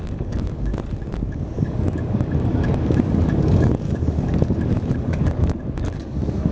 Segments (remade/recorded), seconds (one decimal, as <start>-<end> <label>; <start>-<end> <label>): 0.0-0.7 remade; 0.7-1.3 recorded; 1.3-6.5 remade

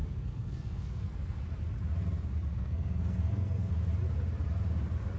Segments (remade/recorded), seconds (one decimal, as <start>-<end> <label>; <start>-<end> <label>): 0.0-1.4 remade; 1.4-2.5 recorded; 2.5-3.7 remade; 3.7-5.2 recorded

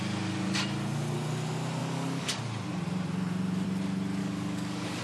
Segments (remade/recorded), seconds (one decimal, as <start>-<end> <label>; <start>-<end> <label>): 0.0-1.8 recorded; 1.8-2.4 remade; 2.4-4.2 recorded; 4.2-5.0 remade